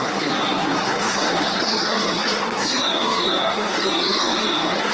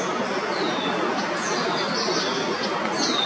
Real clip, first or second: second